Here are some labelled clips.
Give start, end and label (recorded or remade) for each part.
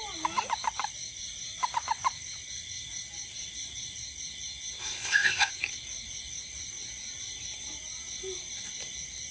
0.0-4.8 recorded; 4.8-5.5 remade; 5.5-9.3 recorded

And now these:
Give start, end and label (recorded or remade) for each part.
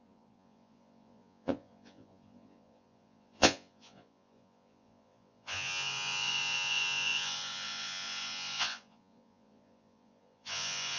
0.0-11.0 remade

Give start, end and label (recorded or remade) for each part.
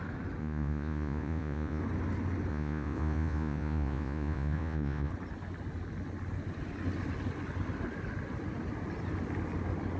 0.0-0.4 recorded; 0.4-1.8 remade; 1.8-2.5 recorded; 2.5-5.1 remade; 5.1-10.0 recorded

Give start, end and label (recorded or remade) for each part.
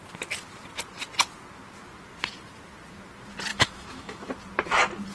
0.0-3.5 recorded; 3.5-4.3 remade; 4.3-5.1 recorded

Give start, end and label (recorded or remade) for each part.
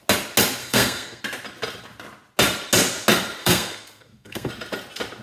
0.0-0.6 recorded; 0.6-1.2 remade; 1.2-3.4 recorded; 3.4-4.5 remade; 4.5-5.2 recorded